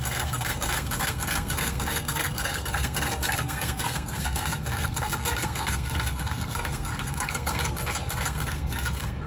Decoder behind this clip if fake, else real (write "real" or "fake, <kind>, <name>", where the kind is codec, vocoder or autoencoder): fake, codec, SNAC